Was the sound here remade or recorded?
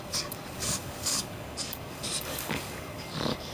remade